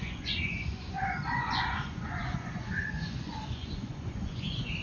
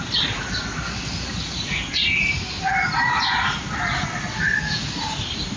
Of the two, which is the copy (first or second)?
first